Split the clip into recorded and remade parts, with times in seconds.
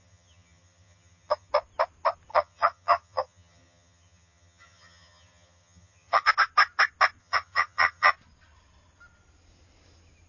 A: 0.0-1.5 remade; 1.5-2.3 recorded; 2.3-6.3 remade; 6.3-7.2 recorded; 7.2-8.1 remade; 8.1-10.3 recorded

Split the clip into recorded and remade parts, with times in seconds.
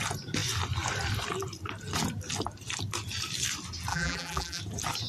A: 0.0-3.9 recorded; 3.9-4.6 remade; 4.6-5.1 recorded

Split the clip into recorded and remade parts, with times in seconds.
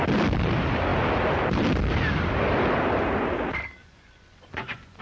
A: 0.0-3.8 recorded; 3.8-5.0 remade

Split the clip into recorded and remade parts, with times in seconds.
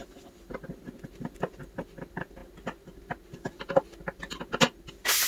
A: 0.0-5.3 recorded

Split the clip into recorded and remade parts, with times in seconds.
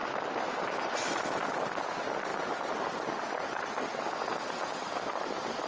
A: 0.0-5.7 recorded